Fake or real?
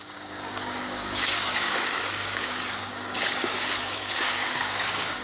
fake